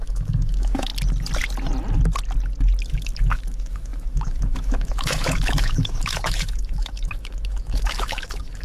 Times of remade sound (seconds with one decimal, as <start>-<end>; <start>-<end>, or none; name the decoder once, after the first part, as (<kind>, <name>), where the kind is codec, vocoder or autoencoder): 0.0-0.9 (autoencoder, DAC-VAE); 2.9-8.6